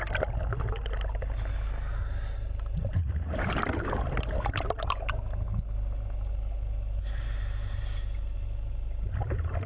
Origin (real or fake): real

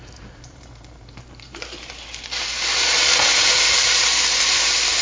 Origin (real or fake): fake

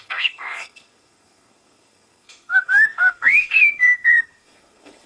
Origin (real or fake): fake